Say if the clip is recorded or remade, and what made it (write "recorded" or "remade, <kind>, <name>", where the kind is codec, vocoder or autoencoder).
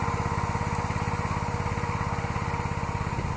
recorded